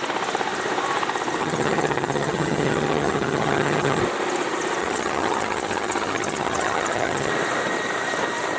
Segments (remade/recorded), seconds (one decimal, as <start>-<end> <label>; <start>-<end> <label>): 0.0-1.4 recorded; 1.4-4.0 remade; 4.0-4.8 recorded; 4.8-7.3 remade; 7.3-8.6 recorded